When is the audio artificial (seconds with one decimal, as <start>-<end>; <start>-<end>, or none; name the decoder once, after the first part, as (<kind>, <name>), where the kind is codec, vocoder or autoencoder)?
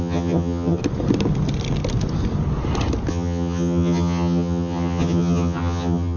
0.0-0.8 (vocoder, HiFi-GAN); 3.1-6.2